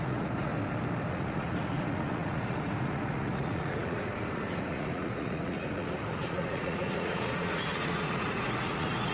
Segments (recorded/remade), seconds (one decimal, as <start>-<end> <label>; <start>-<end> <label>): 0.0-0.5 remade; 0.5-1.1 recorded; 1.1-9.1 remade